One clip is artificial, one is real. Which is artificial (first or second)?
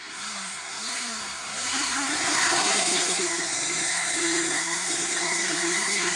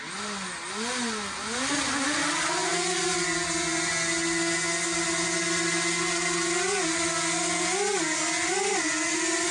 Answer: first